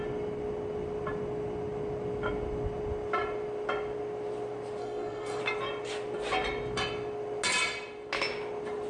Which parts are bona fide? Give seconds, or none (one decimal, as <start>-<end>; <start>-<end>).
0.0-4.8; 5.4-8.9